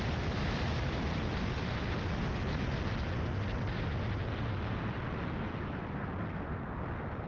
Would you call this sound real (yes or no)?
yes